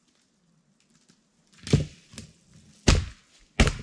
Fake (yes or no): no